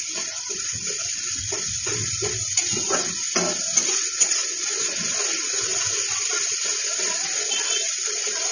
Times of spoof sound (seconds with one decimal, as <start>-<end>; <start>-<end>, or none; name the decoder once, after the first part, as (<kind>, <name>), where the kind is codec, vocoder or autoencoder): none